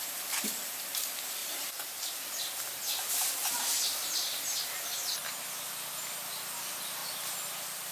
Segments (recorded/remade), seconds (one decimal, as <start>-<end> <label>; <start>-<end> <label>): 0.0-1.4 recorded; 1.4-2.1 remade; 2.1-7.9 recorded